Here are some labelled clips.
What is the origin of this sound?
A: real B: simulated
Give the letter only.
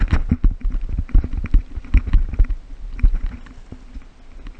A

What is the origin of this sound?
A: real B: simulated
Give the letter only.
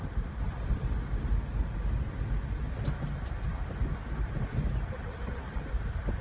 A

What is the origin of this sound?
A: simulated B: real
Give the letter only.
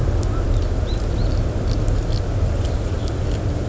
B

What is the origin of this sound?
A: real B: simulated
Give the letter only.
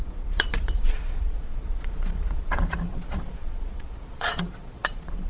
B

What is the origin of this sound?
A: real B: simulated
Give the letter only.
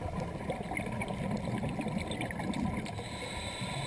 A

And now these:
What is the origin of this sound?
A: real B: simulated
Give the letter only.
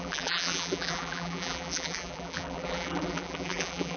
B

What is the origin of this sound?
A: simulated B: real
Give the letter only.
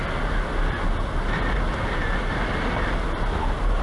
B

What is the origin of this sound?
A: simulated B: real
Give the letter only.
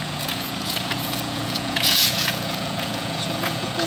A